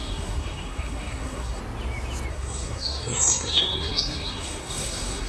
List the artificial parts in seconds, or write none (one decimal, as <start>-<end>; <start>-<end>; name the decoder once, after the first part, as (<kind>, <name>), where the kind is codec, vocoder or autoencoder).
0.0-1.6 (codec, SNAC); 2.3-5.3